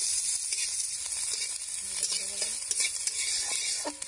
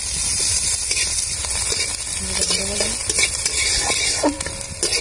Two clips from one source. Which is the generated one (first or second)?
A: second